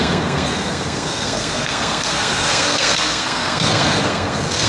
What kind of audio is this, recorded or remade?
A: remade